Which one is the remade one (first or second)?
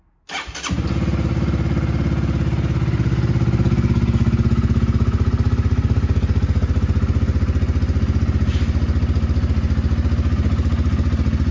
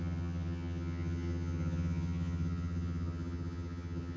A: second